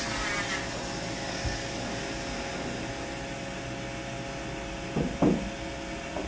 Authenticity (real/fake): real